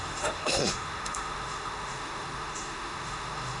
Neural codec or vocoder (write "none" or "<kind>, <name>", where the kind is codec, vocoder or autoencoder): autoencoder, DAC-VAE